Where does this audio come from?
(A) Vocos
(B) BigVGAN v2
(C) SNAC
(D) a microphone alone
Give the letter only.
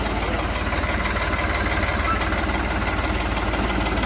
D